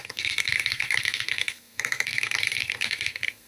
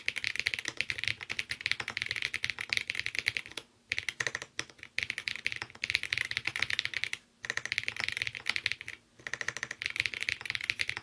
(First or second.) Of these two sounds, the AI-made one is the first